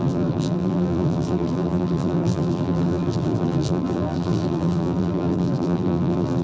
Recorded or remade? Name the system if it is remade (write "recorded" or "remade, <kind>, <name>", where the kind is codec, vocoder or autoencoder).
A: remade, vocoder, BigVGAN v2